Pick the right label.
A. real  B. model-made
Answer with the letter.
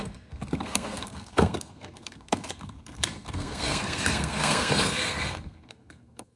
B